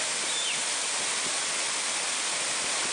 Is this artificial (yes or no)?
no